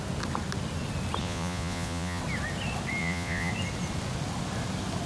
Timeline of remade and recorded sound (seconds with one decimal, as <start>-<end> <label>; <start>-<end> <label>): 0.0-1.2 recorded; 1.2-2.2 remade; 2.2-3.0 recorded; 3.0-3.5 remade; 3.5-5.1 recorded